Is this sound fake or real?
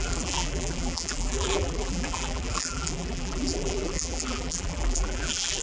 fake